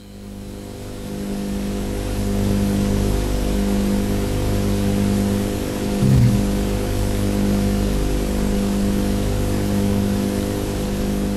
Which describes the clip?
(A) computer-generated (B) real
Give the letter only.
A